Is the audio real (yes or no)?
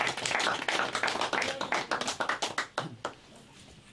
yes